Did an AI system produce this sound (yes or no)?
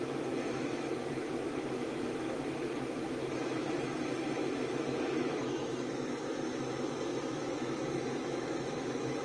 yes